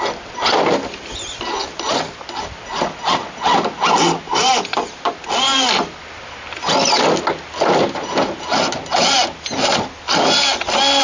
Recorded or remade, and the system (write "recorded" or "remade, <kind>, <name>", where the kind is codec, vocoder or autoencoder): recorded